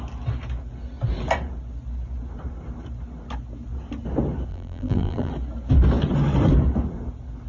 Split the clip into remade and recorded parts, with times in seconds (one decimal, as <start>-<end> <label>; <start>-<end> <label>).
0.0-4.5 recorded; 4.5-5.3 remade; 5.3-7.5 recorded